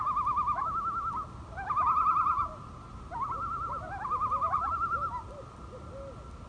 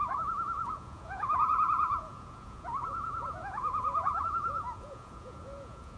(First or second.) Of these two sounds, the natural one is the first